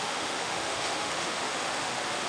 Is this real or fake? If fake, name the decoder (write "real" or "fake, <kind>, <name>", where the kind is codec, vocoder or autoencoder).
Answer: fake, autoencoder, DAC-VAE